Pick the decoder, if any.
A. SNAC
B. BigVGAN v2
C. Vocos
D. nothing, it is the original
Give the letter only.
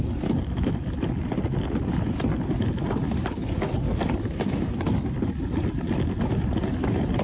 D